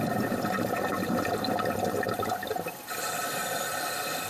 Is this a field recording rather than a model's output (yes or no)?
yes